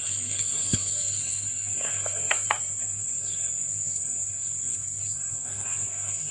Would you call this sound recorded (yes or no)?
no